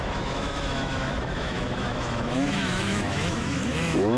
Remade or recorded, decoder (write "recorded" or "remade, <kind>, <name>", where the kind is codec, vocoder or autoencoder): remade, autoencoder, DAC-VAE